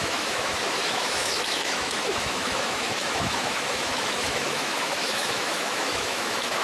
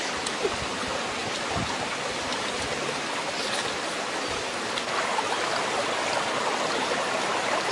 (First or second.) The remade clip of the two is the first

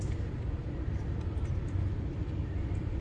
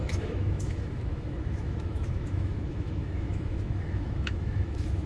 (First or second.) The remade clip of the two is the second